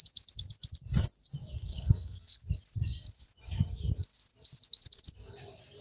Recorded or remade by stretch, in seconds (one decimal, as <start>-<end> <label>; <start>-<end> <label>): 0.0-1.7 recorded; 1.7-2.4 remade; 2.4-5.8 recorded

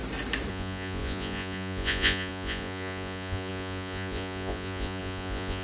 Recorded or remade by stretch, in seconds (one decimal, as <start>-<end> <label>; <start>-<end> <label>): 0.0-0.5 recorded; 0.5-5.6 remade

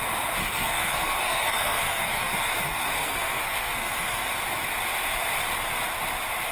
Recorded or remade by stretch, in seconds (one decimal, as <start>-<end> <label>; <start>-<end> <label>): 0.0-0.4 recorded; 0.4-4.3 remade; 4.3-6.5 recorded